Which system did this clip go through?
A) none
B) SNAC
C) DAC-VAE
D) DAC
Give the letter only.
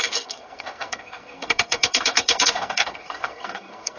B